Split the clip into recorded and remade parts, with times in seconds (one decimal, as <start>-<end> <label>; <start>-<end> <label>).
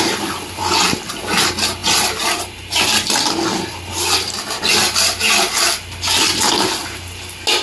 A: 0.0-1.8 recorded; 1.8-6.4 remade; 6.4-7.6 recorded